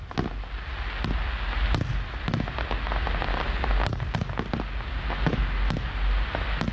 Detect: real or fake real